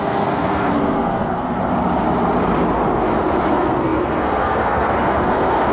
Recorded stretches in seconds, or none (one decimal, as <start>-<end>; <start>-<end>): 1.6-3.5

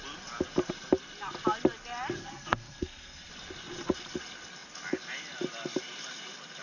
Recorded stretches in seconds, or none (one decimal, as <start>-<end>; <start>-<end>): 0.0-2.2; 3.3-6.6

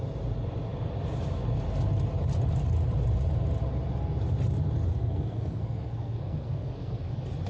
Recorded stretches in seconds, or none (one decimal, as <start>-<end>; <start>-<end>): 0.0-4.9; 7.1-7.5

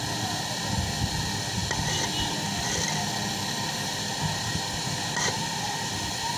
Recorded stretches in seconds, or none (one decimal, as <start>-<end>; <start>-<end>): 0.0-6.4

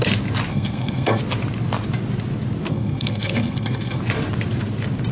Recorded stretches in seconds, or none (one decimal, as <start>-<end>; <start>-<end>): 0.0-0.5; 1.2-2.7; 4.0-5.1

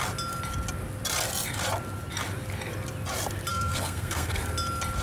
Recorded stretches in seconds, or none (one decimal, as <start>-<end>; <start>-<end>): 0.0-3.5; 4.4-5.0

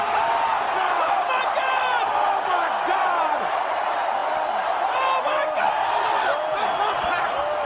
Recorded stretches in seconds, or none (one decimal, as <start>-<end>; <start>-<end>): 0.0-7.6

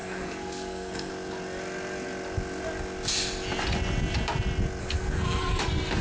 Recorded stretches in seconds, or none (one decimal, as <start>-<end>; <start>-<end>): 1.1-4.8; 5.6-6.0